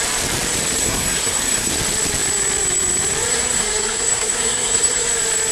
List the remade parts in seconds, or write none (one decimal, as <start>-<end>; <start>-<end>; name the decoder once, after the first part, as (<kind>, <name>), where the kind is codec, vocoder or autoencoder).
0.8-1.7 (codec, SNAC); 3.3-5.1